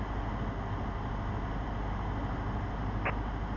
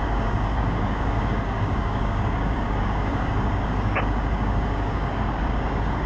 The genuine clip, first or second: first